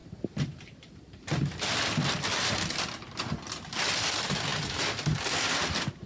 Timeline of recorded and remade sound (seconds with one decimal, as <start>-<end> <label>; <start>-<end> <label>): 0.0-6.1 recorded